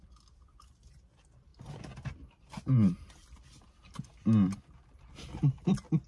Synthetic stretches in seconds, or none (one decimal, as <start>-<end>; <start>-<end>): none